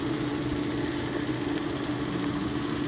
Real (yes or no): yes